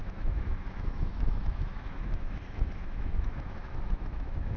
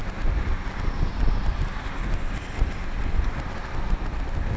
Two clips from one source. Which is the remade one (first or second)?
first